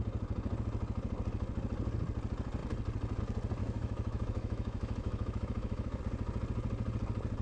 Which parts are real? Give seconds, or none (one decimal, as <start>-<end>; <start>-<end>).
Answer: 0.0-3.6; 6.0-7.4